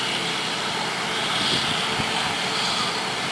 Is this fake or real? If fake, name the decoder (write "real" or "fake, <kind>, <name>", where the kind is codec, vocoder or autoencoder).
real